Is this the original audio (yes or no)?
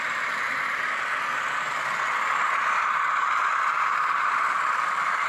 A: yes